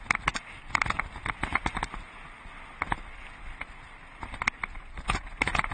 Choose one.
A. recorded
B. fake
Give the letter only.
A